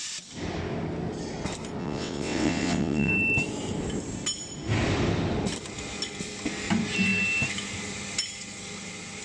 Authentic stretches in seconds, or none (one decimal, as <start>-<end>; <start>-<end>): 0.0-1.8; 3.1-9.2